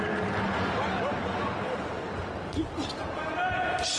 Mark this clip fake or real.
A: real